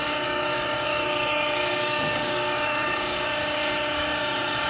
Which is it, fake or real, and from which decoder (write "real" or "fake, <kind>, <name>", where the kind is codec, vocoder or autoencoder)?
fake, codec, DAC